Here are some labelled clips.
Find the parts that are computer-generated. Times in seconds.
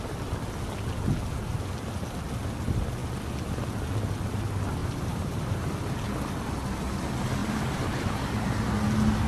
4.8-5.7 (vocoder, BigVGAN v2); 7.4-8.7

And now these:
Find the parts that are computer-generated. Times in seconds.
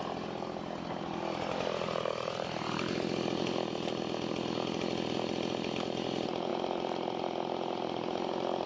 none